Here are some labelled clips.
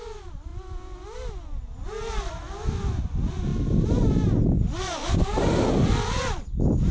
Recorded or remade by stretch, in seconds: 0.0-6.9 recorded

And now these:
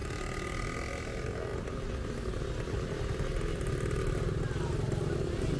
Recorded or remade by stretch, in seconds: 0.0-5.6 recorded

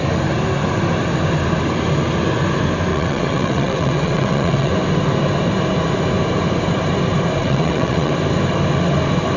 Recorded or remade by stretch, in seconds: 0.0-2.9 recorded; 2.9-4.7 remade; 4.7-7.4 recorded; 7.4-8.1 remade; 8.1-9.4 recorded

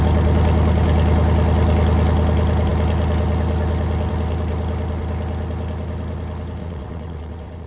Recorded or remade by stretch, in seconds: 0.0-6.6 recorded; 6.6-7.7 remade

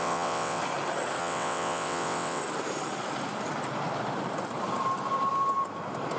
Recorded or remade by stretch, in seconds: 0.0-0.6 remade; 0.6-1.2 recorded; 1.2-2.4 remade; 2.4-6.2 recorded